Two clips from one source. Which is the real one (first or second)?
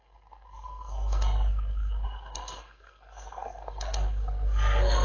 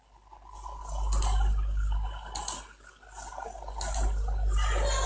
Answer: second